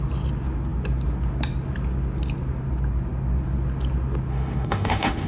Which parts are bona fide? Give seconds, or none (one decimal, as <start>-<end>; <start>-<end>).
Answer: 0.0-4.3